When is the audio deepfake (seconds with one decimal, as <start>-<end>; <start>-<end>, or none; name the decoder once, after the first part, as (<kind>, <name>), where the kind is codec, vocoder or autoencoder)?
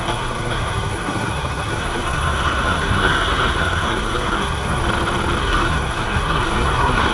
0.0-4.8 (codec, SNAC); 5.4-7.1